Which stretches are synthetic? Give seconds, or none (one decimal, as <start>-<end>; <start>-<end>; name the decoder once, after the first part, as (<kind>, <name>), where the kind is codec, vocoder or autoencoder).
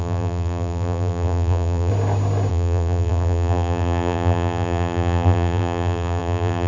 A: 0.0-1.9 (vocoder, BigVGAN v2); 2.5-6.7